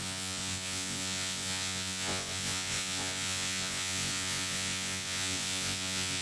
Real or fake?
fake